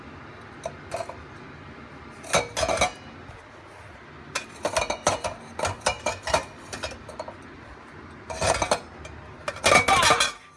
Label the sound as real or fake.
real